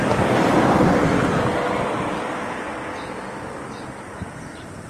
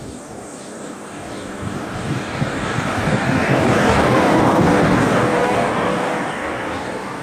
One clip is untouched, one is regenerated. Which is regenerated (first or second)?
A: second